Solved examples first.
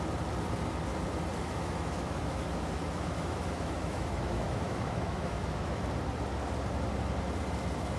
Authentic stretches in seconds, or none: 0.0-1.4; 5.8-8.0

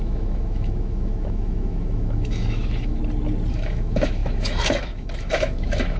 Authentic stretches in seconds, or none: 3.0-3.5